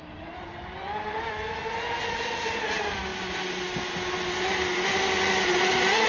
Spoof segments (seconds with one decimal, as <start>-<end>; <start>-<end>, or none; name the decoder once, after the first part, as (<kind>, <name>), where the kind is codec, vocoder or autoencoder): none